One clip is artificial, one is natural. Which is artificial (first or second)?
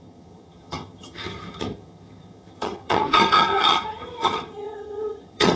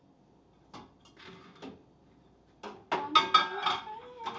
first